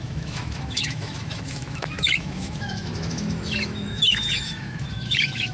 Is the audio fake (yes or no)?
yes